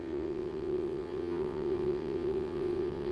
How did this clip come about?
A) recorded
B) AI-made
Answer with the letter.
B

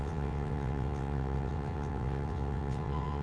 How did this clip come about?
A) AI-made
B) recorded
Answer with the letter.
A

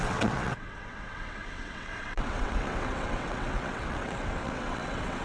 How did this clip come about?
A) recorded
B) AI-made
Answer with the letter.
B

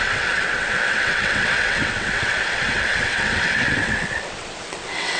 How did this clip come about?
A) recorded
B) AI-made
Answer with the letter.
B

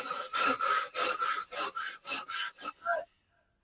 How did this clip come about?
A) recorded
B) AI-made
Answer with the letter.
A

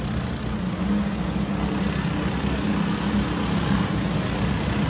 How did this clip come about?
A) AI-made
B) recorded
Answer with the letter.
B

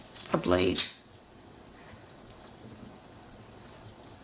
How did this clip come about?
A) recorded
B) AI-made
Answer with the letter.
B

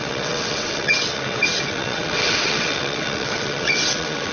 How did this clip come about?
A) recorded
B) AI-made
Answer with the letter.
B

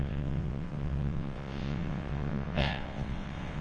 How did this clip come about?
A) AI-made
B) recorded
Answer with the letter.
A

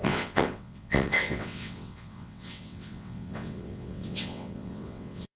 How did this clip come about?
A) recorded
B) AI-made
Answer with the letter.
B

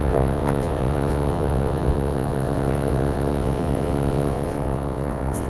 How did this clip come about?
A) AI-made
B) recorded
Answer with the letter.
A